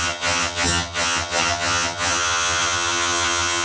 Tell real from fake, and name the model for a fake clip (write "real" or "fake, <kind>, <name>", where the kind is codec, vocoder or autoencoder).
fake, vocoder, HiFi-GAN